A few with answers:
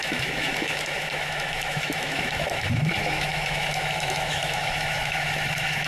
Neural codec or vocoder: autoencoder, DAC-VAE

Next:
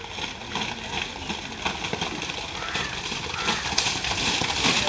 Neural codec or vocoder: none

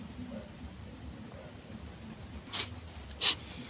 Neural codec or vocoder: none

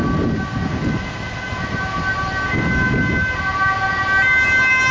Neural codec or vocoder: none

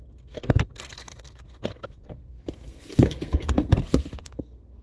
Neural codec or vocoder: codec, SNAC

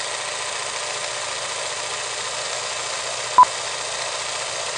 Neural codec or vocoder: none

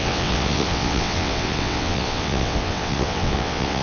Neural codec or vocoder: vocoder, WaveNeXt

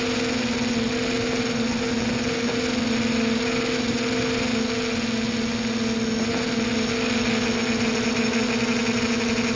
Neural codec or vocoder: none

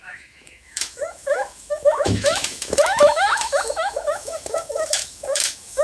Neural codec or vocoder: autoencoder, DAC-VAE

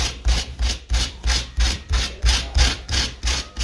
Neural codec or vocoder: vocoder, BigVGAN v2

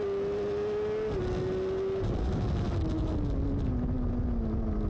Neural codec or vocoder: none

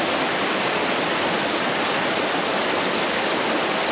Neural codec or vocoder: none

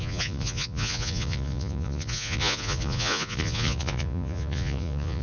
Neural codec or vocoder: vocoder, Vocos